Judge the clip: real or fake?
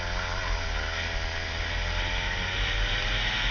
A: real